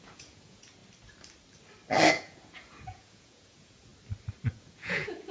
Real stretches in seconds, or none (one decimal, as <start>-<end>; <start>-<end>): 0.8-2.1; 3.9-4.5